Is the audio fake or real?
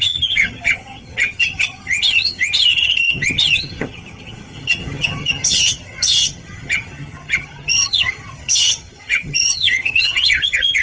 fake